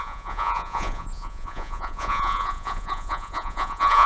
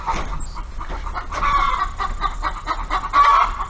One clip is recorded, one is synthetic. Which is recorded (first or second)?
second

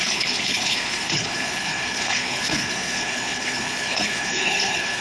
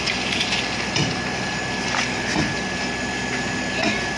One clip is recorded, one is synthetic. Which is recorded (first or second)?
second